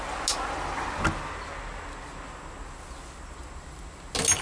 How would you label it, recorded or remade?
recorded